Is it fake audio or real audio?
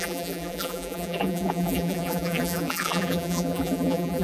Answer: fake